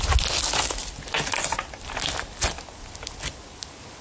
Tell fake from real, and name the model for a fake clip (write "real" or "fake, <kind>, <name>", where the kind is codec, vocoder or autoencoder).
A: real